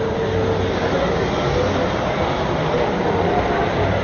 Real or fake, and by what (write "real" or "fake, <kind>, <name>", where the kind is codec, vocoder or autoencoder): real